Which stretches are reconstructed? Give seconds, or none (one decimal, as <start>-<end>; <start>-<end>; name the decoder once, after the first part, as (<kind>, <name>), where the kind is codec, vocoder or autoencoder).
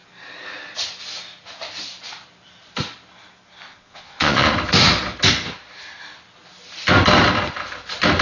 3.7-4.5 (vocoder, Vocos)